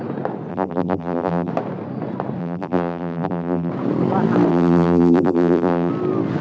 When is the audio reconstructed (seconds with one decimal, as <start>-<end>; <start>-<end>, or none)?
0.5-1.5; 2.4-3.7; 4.5-5.9